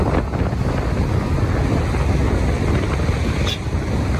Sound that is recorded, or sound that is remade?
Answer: recorded